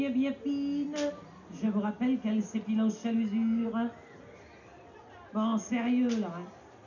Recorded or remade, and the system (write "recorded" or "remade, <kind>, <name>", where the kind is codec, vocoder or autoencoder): recorded